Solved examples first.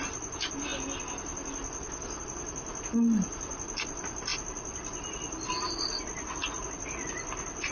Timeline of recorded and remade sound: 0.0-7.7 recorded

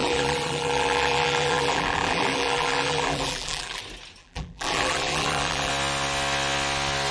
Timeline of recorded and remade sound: 0.0-3.8 remade; 3.8-4.2 recorded; 4.2-5.7 remade; 5.7-7.1 recorded

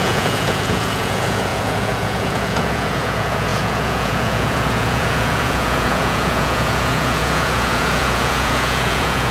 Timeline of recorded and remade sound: 0.0-9.3 remade

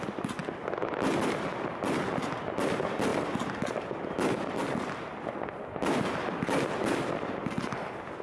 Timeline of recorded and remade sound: 0.0-8.2 recorded

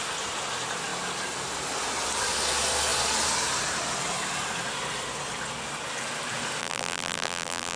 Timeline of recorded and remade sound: 0.0-6.6 recorded; 6.6-7.8 remade

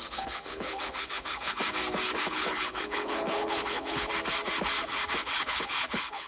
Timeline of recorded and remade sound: 0.0-1.6 remade; 1.6-2.2 recorded; 2.2-4.1 remade; 4.1-5.2 recorded; 5.2-6.3 remade

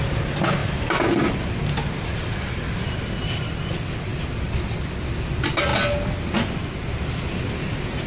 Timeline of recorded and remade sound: 0.0-4.1 recorded; 4.1-5.3 remade; 5.3-8.1 recorded